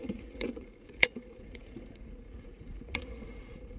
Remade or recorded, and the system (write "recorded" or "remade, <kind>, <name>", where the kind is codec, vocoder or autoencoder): remade, vocoder, Vocos